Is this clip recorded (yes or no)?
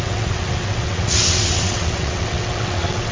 no